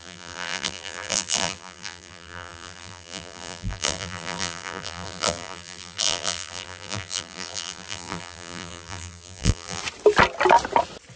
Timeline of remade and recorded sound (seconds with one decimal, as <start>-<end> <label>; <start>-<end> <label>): 0.0-9.8 remade; 9.8-11.2 recorded